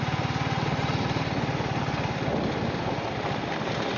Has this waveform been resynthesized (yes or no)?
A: no